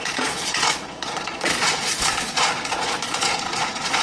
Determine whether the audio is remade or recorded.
remade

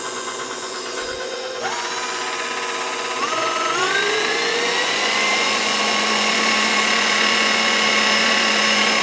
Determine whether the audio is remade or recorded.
remade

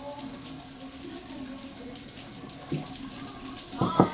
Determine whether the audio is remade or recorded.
recorded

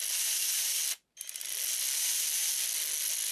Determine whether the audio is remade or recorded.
recorded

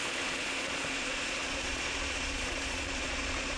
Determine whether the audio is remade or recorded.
remade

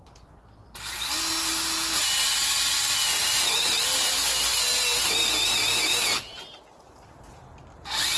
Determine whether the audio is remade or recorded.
recorded